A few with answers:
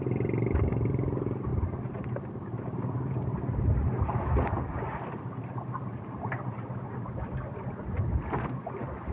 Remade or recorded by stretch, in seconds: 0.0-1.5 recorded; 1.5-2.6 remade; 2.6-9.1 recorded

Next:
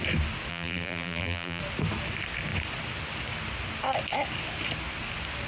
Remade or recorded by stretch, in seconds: 0.0-0.5 recorded; 0.5-1.6 remade; 1.6-5.5 recorded

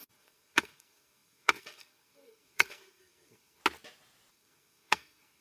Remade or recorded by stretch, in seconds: 0.0-3.6 remade; 3.6-4.3 recorded; 4.3-5.4 remade

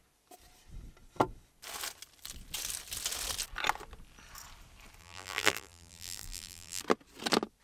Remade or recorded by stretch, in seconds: 0.0-5.0 recorded; 5.0-6.8 remade; 6.8-7.6 recorded

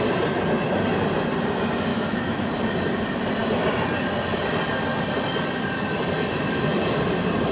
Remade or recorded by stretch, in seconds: 0.0-1.9 recorded; 1.9-2.5 remade; 2.5-7.5 recorded

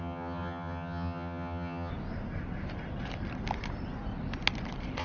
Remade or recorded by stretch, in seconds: 0.0-1.9 remade; 1.9-5.0 recorded